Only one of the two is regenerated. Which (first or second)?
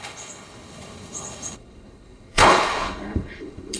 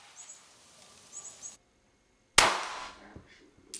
first